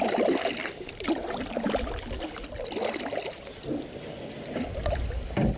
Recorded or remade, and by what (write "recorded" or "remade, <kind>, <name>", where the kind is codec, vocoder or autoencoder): recorded